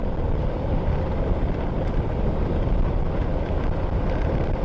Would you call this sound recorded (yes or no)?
yes